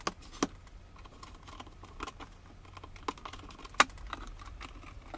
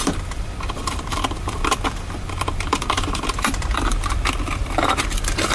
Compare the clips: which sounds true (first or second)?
first